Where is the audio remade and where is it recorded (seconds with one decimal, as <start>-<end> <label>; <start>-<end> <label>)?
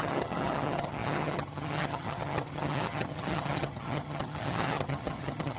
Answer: 0.0-5.6 remade